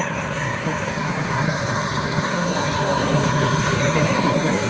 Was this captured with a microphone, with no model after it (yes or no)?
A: no